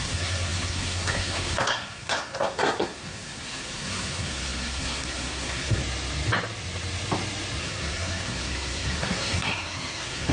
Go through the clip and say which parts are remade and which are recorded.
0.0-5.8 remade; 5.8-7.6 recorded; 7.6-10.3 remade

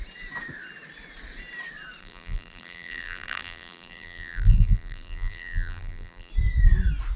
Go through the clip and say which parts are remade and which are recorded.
0.0-2.0 recorded; 2.0-6.3 remade; 6.3-7.2 recorded

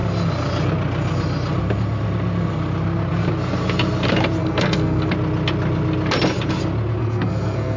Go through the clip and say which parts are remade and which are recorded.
0.0-4.4 recorded; 4.4-5.1 remade; 5.1-7.0 recorded; 7.0-7.8 remade

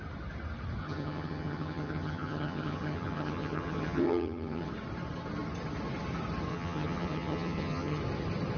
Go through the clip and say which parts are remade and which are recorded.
0.0-0.8 recorded; 0.8-4.7 remade; 4.7-6.5 recorded; 6.5-8.0 remade; 8.0-8.6 recorded